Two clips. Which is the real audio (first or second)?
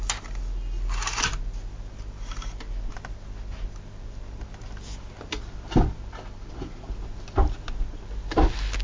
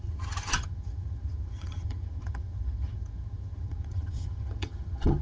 first